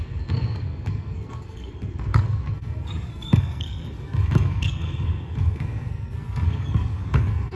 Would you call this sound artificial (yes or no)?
yes